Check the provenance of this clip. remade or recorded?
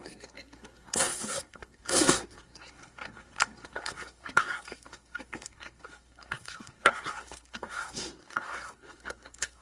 remade